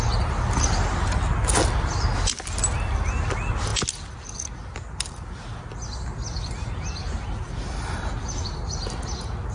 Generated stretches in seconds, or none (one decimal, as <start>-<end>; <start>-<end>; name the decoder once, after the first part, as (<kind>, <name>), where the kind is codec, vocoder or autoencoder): none